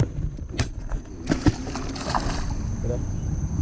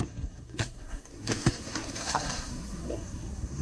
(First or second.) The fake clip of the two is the second